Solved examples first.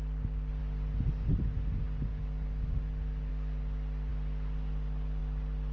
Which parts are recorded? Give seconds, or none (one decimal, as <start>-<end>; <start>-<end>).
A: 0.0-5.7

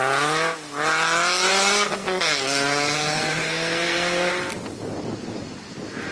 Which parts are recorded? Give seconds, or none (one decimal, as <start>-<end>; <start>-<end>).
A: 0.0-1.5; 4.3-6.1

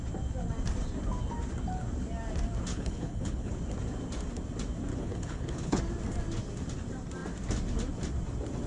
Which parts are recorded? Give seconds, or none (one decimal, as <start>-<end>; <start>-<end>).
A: 0.0-2.7; 3.5-4.9; 5.8-8.7

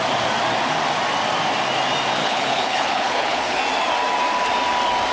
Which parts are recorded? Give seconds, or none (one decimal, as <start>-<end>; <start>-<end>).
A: 0.0-2.2; 3.6-5.1

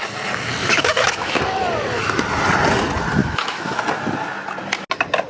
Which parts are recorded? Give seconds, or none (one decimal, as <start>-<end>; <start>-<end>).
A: 0.0-0.6; 1.4-3.2; 3.8-5.3

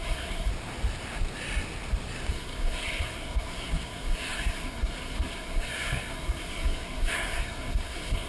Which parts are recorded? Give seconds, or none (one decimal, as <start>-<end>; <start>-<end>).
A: 0.5-2.3